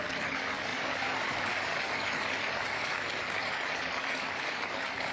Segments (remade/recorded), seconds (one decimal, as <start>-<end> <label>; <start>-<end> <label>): 0.0-5.1 remade

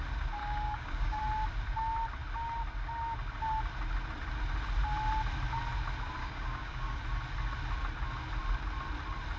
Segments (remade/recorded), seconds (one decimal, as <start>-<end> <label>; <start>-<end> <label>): 0.0-0.4 recorded; 0.4-1.2 remade; 1.2-6.2 recorded; 6.2-7.0 remade; 7.0-9.4 recorded

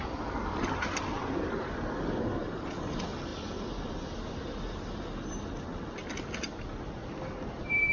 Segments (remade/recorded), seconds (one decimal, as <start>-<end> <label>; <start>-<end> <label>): 0.0-7.9 recorded

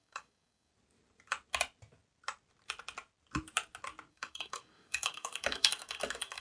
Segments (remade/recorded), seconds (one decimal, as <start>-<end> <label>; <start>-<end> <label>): 0.0-0.7 remade; 0.7-4.1 recorded; 4.1-6.4 remade

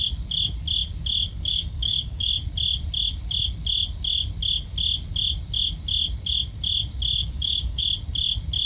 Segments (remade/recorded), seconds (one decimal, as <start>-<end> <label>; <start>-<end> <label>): 0.0-1.3 recorded; 1.3-2.3 remade; 2.3-7.2 recorded; 7.2-7.8 remade; 7.8-8.7 recorded